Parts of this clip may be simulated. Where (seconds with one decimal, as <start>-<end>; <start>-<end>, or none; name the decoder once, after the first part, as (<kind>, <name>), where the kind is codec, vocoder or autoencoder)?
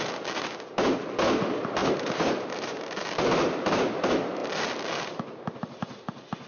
1.8-3.0 (vocoder, BigVGAN v2)